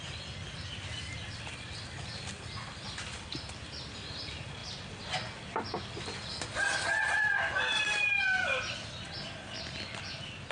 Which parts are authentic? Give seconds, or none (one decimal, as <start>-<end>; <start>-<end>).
0.0-10.5